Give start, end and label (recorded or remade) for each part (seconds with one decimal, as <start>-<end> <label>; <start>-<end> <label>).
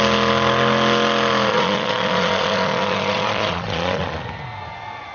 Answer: 0.0-1.5 recorded; 1.5-4.2 remade; 4.2-5.1 recorded